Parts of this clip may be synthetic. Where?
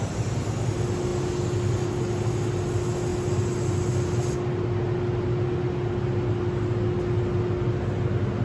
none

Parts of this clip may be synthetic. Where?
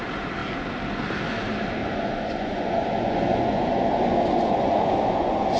1.8-5.6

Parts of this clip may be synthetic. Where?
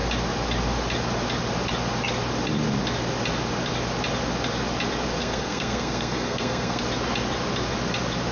5.2-6.8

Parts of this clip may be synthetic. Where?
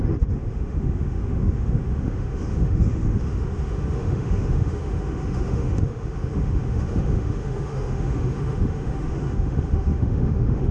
0.0-10.7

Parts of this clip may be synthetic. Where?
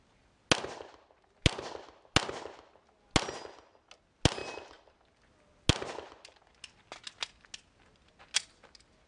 none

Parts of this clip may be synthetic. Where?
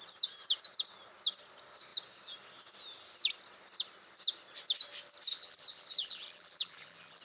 5.3-7.2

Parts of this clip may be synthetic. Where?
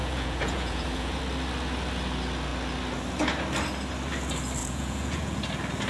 0.0-1.2; 4.6-5.4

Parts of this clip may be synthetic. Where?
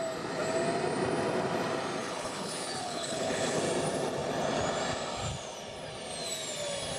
2.0-3.6